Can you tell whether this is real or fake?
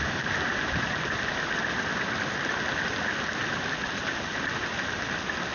real